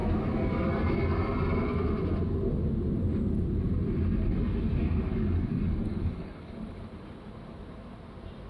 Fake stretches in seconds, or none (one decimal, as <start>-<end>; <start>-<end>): 5.1-6.5

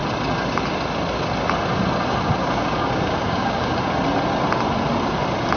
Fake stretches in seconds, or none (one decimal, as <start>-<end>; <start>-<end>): 2.4-3.8

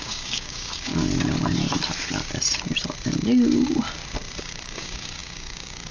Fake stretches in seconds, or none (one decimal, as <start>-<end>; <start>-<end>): 0.0-0.9; 4.4-5.9

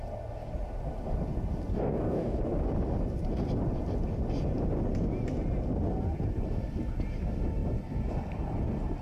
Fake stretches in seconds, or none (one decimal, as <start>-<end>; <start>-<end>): 1.7-2.4

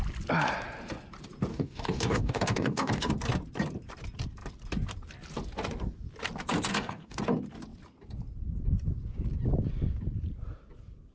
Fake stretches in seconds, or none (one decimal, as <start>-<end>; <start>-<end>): 1.5-3.1; 6.7-7.2

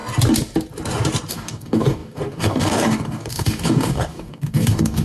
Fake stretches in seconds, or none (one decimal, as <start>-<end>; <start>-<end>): 1.3-5.0

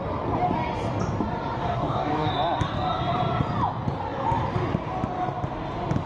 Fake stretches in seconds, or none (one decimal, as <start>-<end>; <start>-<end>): 1.6-2.3